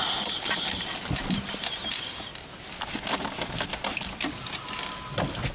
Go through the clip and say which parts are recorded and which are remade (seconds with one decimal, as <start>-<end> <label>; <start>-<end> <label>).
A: 0.0-5.5 recorded